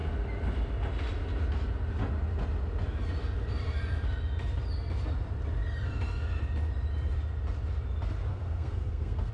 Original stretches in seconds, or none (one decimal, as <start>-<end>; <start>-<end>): 0.0-8.3